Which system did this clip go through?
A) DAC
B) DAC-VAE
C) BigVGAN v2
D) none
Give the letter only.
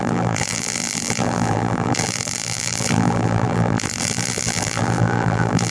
C